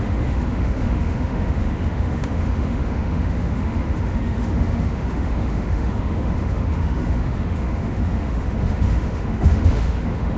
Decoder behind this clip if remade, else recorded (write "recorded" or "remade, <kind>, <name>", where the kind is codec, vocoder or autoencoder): remade, autoencoder, DAC-VAE